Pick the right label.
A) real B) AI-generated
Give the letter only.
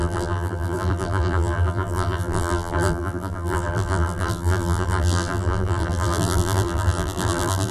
B